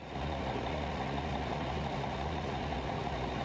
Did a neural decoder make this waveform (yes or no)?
yes